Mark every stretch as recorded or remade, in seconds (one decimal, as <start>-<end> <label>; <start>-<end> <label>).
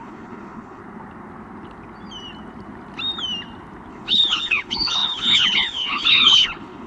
0.0-0.8 remade; 0.8-3.9 recorded; 3.9-6.9 remade